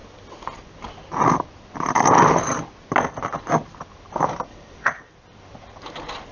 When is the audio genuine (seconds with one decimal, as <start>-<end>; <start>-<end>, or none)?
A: 0.0-4.5; 5.1-6.3